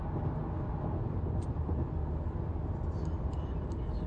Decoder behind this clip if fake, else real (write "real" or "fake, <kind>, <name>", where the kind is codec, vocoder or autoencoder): real